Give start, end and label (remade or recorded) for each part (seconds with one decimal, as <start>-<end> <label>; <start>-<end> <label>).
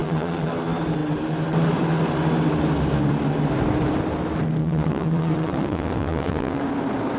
0.0-0.5 remade; 0.5-4.6 recorded; 4.6-6.6 remade; 6.6-7.2 recorded